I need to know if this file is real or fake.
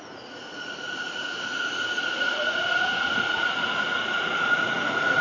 fake